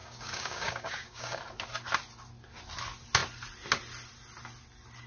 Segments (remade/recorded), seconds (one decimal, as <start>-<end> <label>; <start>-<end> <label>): 0.0-1.4 remade; 1.4-5.1 recorded